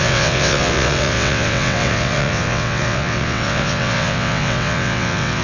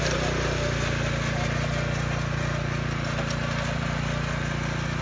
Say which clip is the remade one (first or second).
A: first